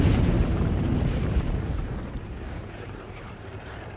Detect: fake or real fake